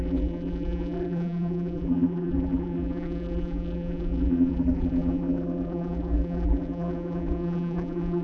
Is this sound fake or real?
fake